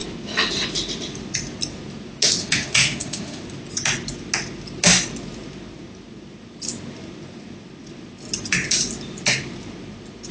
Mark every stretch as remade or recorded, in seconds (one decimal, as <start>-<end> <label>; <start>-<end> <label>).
0.0-2.4 recorded; 2.4-3.4 remade; 3.4-10.3 recorded